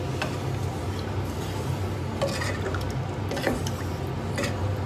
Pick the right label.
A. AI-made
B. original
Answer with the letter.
B